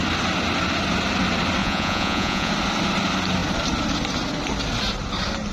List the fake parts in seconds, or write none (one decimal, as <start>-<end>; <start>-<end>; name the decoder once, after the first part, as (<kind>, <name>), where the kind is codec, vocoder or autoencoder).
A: 1.6-2.5 (vocoder, Vocos)